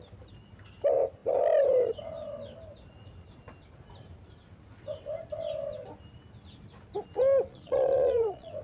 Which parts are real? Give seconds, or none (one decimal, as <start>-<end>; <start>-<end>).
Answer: 0.0-7.5